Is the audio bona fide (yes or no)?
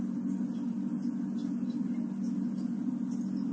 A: yes